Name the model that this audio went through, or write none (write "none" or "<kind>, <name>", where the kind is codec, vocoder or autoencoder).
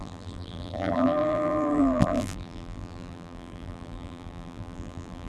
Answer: vocoder, BigVGAN v2